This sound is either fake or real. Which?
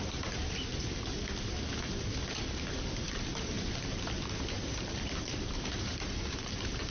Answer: fake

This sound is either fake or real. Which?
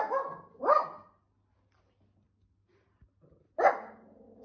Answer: real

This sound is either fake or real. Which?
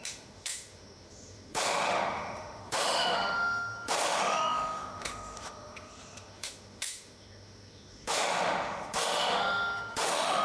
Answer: fake